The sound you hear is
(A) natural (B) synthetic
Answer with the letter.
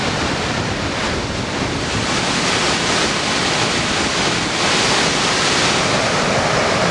B